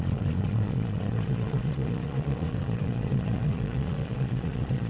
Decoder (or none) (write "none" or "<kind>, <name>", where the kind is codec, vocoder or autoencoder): vocoder, Vocos